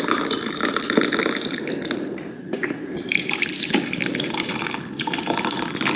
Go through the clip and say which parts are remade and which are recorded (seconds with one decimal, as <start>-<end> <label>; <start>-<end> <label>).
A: 0.0-2.4 recorded; 2.4-4.7 remade; 4.7-6.0 recorded